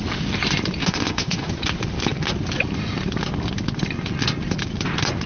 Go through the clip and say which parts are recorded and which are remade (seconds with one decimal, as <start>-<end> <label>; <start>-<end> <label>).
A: 0.0-0.8 recorded; 0.8-1.5 remade; 1.5-5.3 recorded